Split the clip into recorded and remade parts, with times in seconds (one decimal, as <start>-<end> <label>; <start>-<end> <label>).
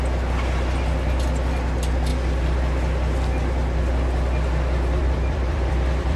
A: 0.0-5.0 recorded; 5.0-6.2 remade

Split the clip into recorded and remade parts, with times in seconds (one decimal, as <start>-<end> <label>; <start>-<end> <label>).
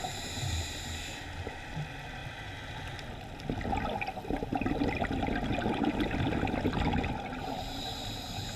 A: 0.0-8.6 recorded